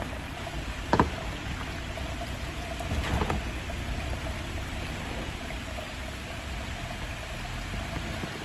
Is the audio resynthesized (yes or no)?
no